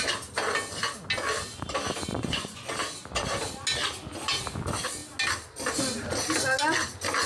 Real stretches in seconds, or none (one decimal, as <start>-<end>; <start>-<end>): 0.0-2.1; 2.7-7.3